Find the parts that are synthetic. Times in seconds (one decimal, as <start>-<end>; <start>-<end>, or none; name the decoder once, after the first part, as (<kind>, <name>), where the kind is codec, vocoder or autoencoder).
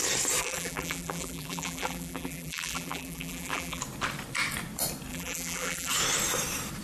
0.4-3.8 (vocoder, BigVGAN v2); 5.1-5.9